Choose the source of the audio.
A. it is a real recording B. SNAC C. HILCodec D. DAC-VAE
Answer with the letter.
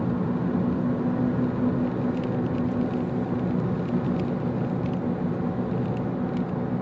A